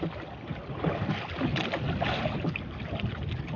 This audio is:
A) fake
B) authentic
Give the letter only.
B